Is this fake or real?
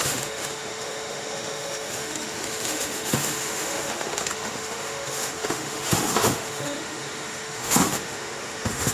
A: fake